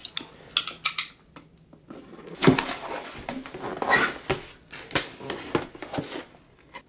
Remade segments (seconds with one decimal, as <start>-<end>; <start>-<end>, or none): none